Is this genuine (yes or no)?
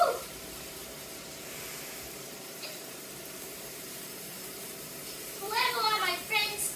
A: no